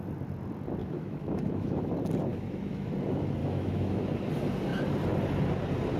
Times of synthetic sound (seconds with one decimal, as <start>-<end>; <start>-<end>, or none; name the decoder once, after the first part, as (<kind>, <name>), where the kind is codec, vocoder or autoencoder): 0.8-1.9 (autoencoder, DAC-VAE); 2.3-2.9; 3.4-4.0